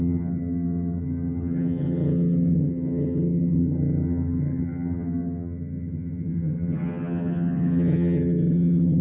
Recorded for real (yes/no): no